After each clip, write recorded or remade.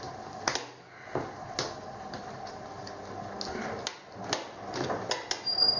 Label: recorded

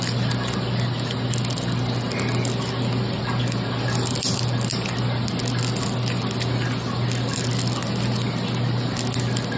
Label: recorded